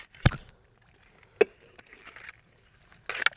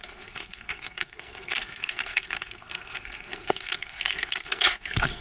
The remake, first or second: second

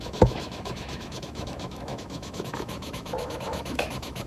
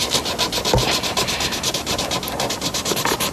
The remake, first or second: first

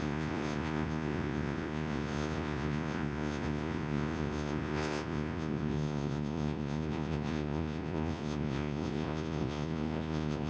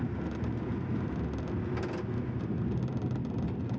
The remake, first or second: first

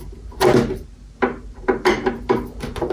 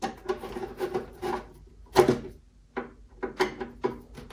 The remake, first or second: first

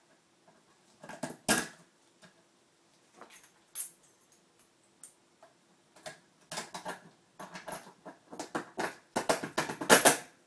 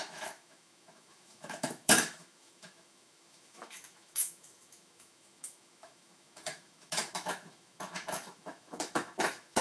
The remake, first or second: second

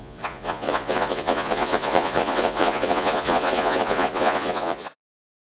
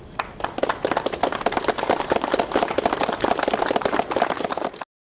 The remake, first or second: first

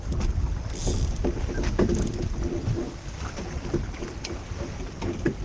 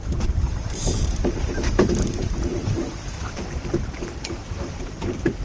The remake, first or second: second